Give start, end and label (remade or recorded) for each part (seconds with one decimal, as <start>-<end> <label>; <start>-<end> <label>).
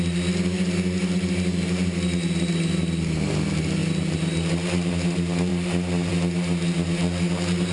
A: 0.0-7.7 recorded